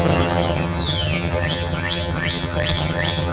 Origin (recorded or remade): remade